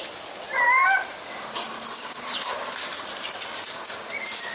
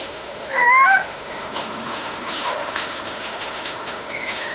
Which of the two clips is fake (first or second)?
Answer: second